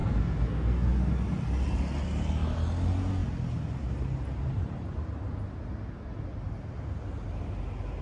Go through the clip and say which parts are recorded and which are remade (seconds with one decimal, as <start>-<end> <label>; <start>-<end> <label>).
0.0-1.1 remade; 1.1-8.0 recorded